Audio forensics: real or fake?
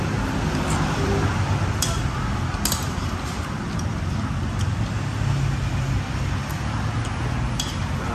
real